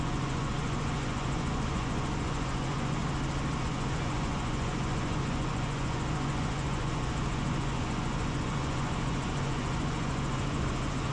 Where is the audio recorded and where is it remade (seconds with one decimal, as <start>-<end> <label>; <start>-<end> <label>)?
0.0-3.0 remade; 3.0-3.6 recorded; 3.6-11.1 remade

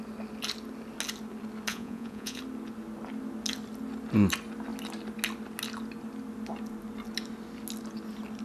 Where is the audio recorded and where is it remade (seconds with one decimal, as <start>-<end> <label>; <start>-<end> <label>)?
0.0-1.7 recorded; 1.7-2.4 remade; 2.4-8.4 recorded

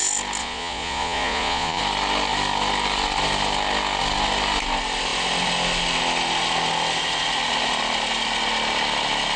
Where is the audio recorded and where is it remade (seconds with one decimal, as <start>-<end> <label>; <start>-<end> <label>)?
0.0-0.4 recorded; 0.4-1.8 remade; 1.8-9.4 recorded